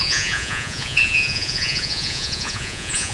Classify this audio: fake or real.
fake